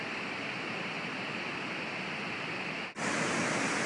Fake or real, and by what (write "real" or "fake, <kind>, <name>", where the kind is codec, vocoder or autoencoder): fake, vocoder, BigVGAN v2